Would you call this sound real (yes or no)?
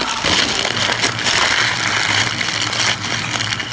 yes